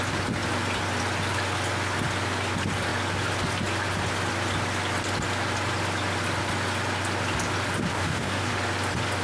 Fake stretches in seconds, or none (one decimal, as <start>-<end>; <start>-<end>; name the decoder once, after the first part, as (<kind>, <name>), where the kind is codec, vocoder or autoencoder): 7.9-8.5 (codec, DAC)